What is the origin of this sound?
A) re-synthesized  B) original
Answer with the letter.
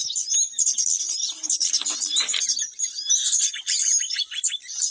B